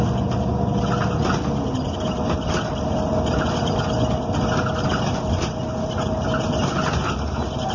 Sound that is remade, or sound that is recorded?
recorded